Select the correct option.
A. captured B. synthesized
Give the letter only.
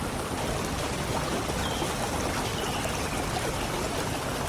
A